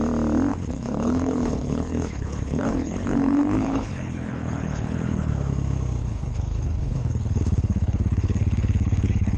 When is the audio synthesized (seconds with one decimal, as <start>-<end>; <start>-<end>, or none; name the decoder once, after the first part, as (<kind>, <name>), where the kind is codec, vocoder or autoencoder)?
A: 0.5-5.3 (codec, HILCodec); 6.0-9.4